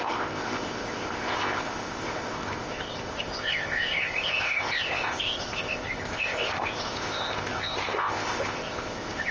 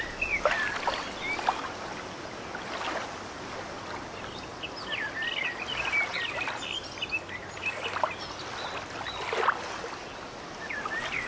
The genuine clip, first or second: second